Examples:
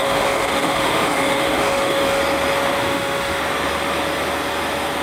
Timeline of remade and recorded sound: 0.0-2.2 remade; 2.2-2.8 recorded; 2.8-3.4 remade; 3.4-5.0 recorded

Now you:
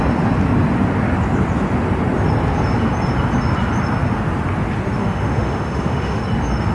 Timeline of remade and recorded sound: 0.0-5.0 recorded; 5.0-6.2 remade; 6.2-6.7 recorded

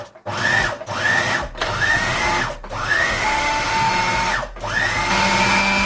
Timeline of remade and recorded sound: 0.0-1.6 recorded; 1.6-2.2 remade; 2.2-2.8 recorded; 2.8-3.9 remade; 3.9-5.9 recorded

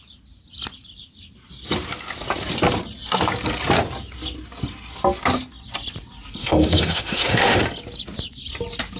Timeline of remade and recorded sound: 0.0-6.4 recorded; 6.4-7.6 remade; 7.6-9.0 recorded

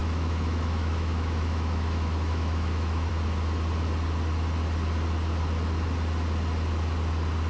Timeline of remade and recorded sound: 0.0-3.1 remade; 3.1-7.5 recorded

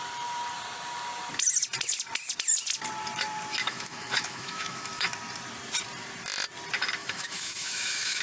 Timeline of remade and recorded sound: 0.0-3.6 recorded; 3.6-5.1 remade; 5.1-7.0 recorded; 7.0-8.2 remade

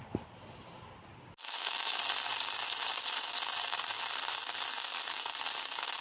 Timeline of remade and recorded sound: 0.0-1.4 recorded; 1.4-2.0 remade; 2.0-6.0 recorded